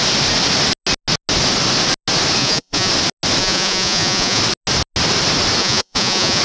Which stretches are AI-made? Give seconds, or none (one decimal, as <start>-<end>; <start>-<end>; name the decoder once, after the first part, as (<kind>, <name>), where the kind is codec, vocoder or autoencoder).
2.4-2.9 (vocoder, Vocos); 3.4-4.4; 5.6-6.4

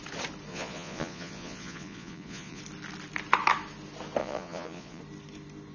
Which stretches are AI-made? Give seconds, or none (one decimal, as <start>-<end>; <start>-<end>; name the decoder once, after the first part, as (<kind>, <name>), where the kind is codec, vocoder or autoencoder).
0.5-2.6 (vocoder, Vocos); 4.2-5.0